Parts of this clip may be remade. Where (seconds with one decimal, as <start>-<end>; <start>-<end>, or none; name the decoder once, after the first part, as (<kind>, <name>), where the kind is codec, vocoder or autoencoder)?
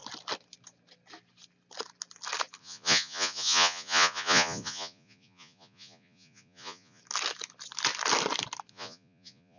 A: 2.6-7.0 (vocoder, Vocos); 8.7-9.6